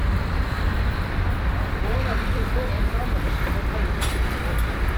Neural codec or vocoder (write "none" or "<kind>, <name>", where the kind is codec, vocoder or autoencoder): vocoder, BigVGAN v2